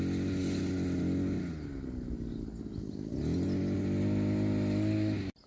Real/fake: real